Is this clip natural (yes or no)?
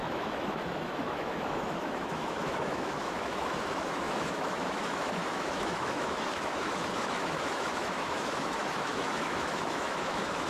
no